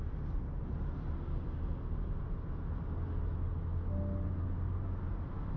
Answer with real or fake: real